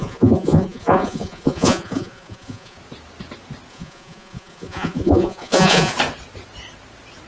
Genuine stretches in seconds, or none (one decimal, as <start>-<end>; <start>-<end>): 2.8-3.7; 5.9-7.3